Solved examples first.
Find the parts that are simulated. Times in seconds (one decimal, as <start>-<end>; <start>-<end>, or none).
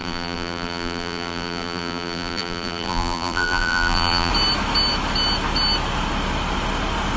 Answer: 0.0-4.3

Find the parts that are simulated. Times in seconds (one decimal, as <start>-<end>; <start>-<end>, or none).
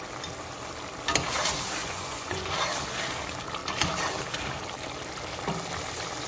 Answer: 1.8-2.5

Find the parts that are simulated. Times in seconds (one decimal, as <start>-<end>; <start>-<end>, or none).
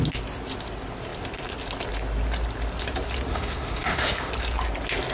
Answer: 3.3-4.3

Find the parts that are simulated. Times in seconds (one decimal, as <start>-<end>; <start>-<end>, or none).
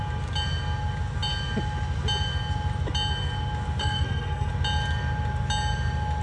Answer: 3.8-4.5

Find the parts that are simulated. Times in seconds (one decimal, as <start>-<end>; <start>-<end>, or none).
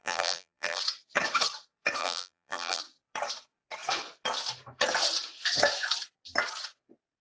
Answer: 0.0-0.8; 2.0-2.8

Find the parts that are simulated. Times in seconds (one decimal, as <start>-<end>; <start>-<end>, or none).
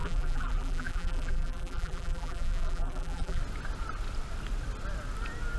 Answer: 0.0-3.4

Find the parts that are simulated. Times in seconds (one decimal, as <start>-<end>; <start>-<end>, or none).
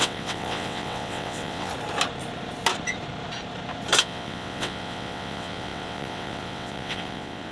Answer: 0.0-1.7; 4.0-7.5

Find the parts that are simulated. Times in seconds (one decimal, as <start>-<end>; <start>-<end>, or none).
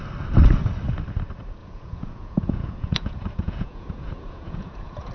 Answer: 1.6-5.1